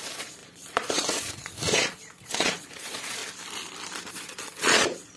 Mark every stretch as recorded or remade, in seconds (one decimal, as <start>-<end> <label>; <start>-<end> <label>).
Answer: 0.0-3.2 remade; 3.2-4.1 recorded; 4.1-5.2 remade